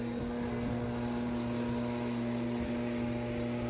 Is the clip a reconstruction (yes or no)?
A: no